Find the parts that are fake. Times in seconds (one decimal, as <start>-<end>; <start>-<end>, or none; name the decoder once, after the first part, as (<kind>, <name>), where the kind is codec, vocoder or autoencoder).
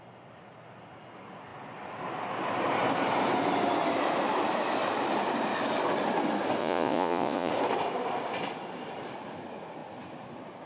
6.6-7.5 (vocoder, Vocos)